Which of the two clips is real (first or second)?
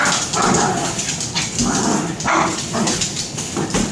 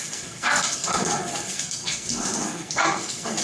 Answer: first